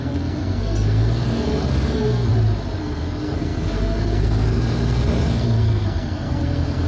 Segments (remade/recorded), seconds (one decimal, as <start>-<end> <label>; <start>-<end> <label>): 0.0-2.3 remade; 2.3-2.8 recorded; 2.8-6.9 remade